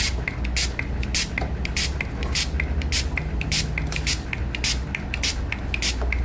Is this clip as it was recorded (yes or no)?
yes